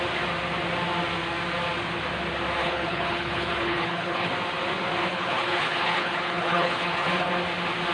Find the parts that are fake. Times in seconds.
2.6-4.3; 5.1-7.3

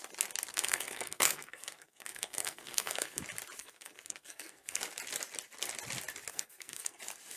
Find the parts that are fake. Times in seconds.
0.5-3.2; 3.6-4.8; 6.3-7.0

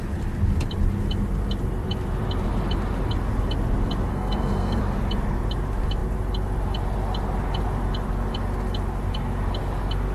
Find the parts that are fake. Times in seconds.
4.1-4.8